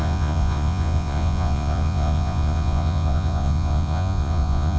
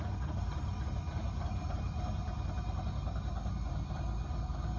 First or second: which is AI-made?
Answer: first